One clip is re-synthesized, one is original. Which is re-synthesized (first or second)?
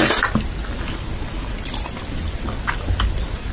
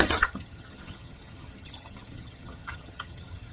second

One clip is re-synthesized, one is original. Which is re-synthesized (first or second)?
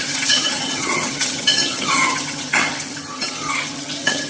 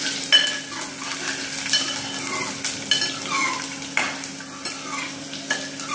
first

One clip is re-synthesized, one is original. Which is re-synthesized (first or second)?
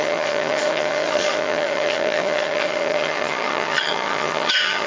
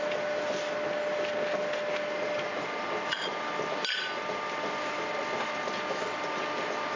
first